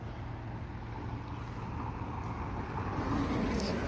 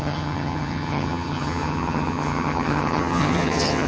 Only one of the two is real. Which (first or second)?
first